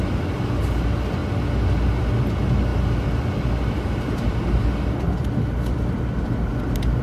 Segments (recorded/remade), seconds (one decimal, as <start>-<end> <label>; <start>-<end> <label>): 0.0-7.0 recorded